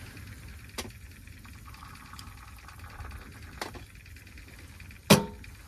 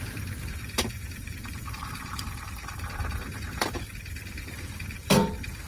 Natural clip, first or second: first